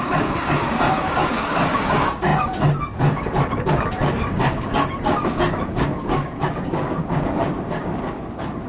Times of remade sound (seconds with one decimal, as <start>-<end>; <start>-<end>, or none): 0.0-8.7